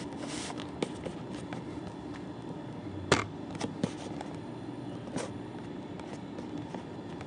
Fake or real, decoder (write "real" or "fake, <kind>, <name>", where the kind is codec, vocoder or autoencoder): real